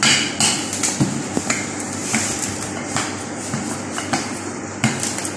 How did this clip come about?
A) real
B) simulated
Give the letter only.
A